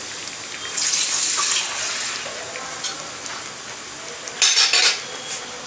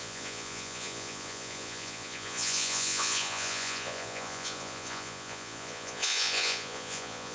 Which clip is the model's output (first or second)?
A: second